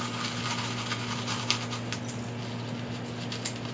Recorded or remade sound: recorded